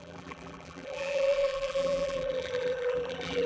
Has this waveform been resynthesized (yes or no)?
yes